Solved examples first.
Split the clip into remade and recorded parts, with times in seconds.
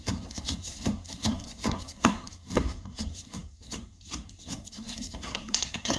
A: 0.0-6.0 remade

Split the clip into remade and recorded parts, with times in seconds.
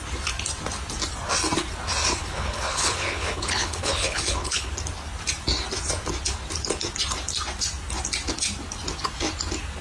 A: 0.0-2.2 recorded; 2.2-4.7 remade; 4.7-9.8 recorded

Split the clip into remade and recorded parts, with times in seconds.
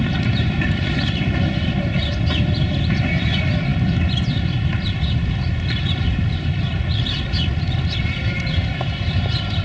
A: 0.0-3.7 remade; 3.7-4.3 recorded; 4.3-6.7 remade; 6.7-8.0 recorded; 8.0-9.6 remade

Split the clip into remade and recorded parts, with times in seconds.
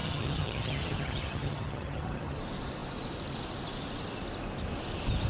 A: 0.0-2.4 remade; 2.4-5.3 recorded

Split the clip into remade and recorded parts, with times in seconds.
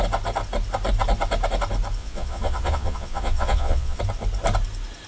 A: 0.0-2.0 recorded; 2.0-4.0 remade; 4.0-5.1 recorded